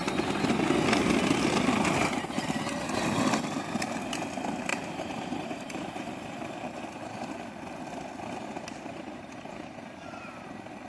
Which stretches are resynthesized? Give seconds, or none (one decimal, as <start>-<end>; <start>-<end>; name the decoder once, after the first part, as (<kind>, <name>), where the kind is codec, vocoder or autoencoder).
4.7-6.5 (vocoder, BigVGAN v2); 8.4-10.2